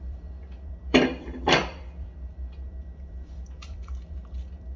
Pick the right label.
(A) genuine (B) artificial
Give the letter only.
B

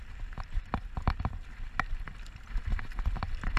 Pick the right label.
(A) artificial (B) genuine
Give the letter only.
A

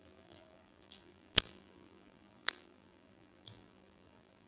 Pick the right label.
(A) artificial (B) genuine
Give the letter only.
A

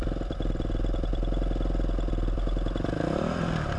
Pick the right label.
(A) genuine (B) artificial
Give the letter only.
B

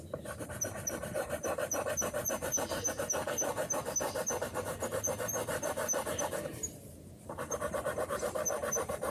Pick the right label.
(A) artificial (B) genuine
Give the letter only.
A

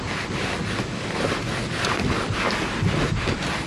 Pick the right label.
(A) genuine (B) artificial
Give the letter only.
A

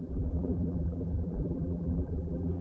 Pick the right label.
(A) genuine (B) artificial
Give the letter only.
B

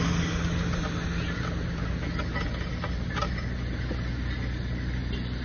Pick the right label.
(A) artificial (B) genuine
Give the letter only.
B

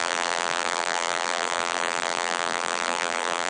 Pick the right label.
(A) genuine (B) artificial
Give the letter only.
B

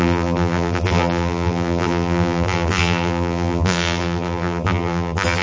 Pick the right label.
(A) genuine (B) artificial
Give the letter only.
B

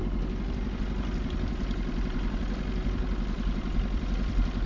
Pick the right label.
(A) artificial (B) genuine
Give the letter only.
B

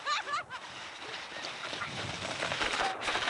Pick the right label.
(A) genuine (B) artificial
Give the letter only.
B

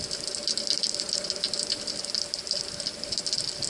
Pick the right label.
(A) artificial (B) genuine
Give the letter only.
B